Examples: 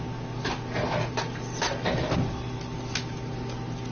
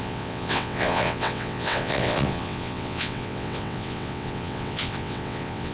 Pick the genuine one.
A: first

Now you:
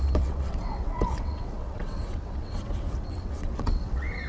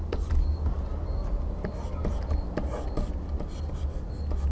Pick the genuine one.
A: second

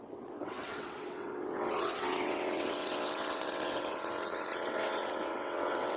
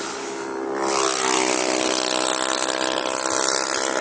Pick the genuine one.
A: second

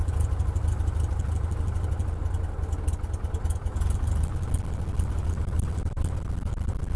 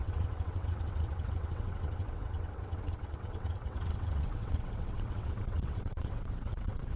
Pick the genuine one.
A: first